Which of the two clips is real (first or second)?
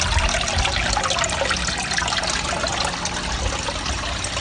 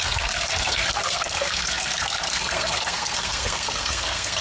first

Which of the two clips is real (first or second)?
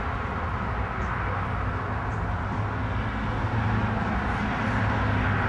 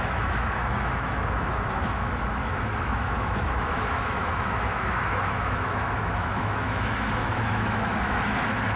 first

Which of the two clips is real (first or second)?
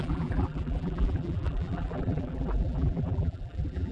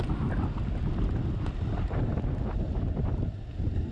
second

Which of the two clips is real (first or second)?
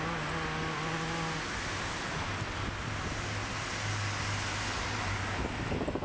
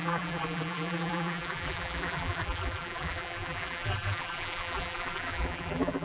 first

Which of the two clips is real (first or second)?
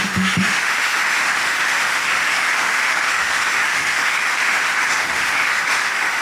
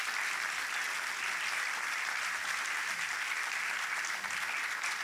second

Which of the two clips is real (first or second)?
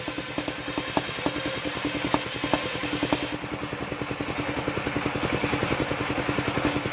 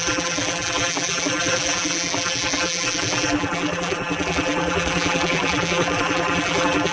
first